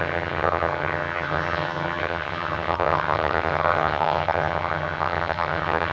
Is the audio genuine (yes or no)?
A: no